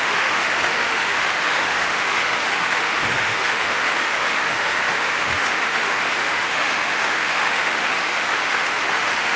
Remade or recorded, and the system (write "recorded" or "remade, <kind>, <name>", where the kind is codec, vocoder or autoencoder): remade, autoencoder, DAC-VAE